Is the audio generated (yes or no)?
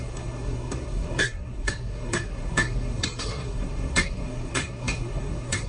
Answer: yes